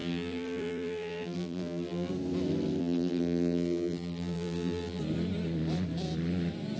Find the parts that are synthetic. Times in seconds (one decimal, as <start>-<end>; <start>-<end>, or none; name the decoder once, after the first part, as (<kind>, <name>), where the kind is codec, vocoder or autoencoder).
0.0-2.1 (vocoder, BigVGAN v2); 2.8-5.0

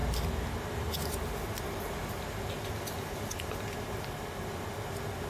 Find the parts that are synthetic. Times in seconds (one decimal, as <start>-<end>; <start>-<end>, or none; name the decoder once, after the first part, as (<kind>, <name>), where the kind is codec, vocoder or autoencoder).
none

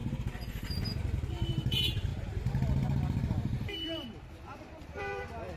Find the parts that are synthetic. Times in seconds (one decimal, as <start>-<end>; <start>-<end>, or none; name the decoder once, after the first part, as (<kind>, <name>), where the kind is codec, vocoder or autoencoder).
1.5-5.6 (vocoder, BigVGAN v2)

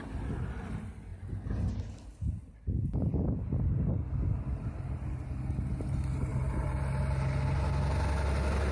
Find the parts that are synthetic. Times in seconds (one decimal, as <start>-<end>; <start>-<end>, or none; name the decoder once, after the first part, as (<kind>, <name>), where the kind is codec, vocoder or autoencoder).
6.3-6.8 (vocoder, BigVGAN v2)

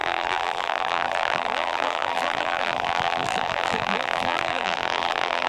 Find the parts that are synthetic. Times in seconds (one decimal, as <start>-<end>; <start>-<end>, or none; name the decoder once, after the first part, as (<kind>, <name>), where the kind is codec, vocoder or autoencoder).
0.0-5.5 (vocoder, BigVGAN v2)

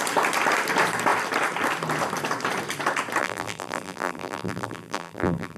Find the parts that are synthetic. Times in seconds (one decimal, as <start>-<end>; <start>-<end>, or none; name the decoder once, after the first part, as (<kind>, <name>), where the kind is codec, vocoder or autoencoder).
3.2-5.6 (vocoder, BigVGAN v2)